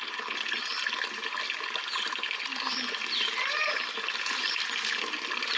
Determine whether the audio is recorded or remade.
recorded